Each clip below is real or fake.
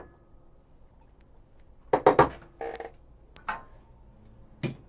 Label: real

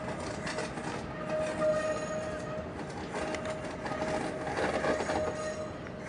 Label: real